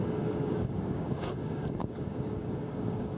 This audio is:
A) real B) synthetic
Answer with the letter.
B